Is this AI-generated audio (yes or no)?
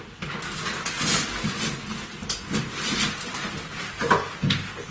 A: no